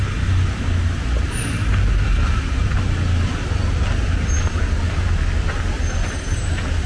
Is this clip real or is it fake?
real